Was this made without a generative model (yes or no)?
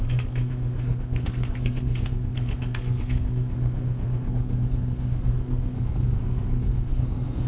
no